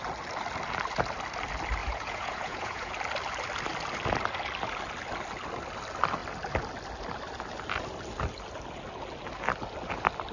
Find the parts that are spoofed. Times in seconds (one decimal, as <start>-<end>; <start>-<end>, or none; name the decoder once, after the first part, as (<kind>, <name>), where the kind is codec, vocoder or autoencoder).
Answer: 1.8-2.9 (vocoder, Vocos)